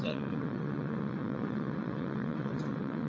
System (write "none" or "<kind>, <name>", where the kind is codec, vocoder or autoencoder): vocoder, WaveNeXt